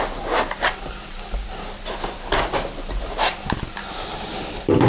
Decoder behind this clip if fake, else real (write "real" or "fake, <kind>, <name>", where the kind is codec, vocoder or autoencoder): real